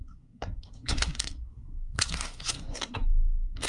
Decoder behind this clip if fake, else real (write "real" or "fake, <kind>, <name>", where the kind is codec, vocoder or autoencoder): fake, codec, SNAC